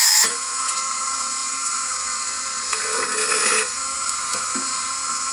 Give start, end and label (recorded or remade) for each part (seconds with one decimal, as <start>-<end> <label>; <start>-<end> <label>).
0.0-5.3 remade